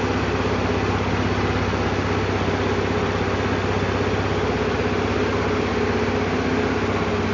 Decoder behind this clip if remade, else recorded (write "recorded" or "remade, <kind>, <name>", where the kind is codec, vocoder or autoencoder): recorded